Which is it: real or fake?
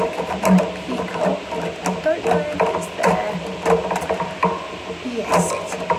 real